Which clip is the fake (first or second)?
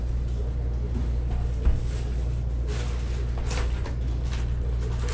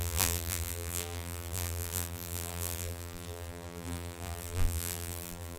second